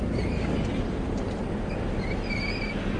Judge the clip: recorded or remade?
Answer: recorded